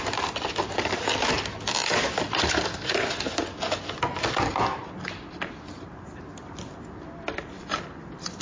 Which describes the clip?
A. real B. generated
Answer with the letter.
A